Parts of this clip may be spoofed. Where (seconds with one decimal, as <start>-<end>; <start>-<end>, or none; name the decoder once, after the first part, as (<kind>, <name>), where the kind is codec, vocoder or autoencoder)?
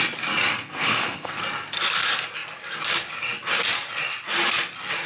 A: 0.5-1.4 (codec, SNAC)